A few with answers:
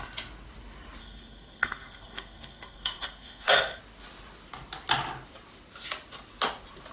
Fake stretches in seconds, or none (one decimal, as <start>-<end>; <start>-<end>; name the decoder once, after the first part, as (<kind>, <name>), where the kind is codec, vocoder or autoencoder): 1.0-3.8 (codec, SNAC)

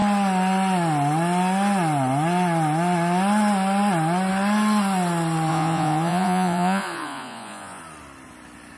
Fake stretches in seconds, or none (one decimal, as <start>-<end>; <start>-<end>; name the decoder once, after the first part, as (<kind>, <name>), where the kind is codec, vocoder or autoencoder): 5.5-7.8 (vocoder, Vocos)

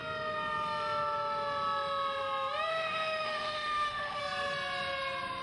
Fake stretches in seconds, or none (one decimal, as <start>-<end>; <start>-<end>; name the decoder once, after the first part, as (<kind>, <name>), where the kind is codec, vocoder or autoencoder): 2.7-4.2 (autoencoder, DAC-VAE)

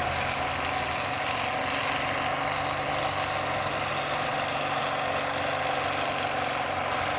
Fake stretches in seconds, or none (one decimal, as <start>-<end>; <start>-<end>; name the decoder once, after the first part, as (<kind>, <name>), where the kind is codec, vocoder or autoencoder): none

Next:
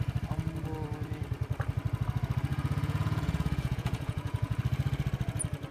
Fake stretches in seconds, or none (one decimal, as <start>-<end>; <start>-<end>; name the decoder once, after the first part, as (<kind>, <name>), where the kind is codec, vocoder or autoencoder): 2.5-4.6 (vocoder, Vocos)

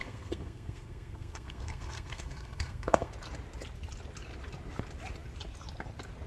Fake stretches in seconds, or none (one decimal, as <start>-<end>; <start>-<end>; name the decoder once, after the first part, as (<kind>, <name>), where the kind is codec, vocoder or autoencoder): 0.0-3.1 (codec, SNAC)

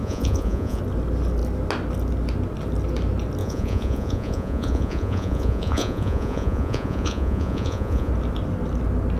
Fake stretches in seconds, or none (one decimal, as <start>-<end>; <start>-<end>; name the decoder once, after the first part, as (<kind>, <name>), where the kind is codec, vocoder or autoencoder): 0.0-0.8 (vocoder, Vocos); 3.4-8.1

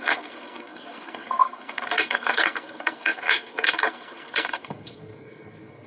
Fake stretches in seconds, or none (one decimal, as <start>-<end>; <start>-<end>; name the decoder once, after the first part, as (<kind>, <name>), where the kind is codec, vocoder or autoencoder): 0.0-5.9 (codec, SNAC)